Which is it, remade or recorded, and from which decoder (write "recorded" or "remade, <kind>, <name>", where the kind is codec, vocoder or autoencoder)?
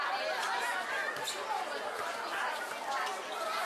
recorded